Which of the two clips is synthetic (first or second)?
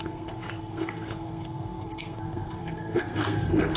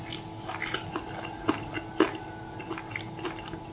first